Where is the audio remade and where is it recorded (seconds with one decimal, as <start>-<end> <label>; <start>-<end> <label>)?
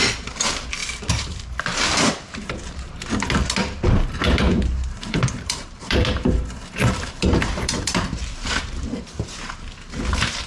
0.0-0.8 recorded; 0.8-2.9 remade; 2.9-4.5 recorded; 4.5-9.5 remade; 9.5-10.5 recorded